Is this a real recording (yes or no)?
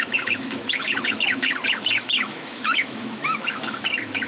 no